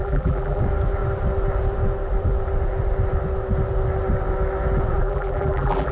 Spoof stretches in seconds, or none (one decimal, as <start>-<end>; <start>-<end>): 0.0-0.6; 5.0-5.9